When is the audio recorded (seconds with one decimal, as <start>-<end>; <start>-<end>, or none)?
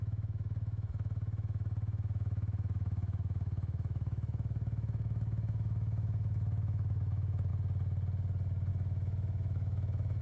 7.5-8.7